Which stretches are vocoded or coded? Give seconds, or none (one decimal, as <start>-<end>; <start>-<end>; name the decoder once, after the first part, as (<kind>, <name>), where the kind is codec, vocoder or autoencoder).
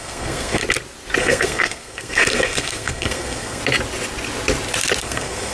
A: 0.0-0.6 (codec, SNAC); 1.2-3.6; 5.0-5.5